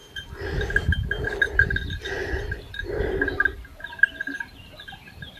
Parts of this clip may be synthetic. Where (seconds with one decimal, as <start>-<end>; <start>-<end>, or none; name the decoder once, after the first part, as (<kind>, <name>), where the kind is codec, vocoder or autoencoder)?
none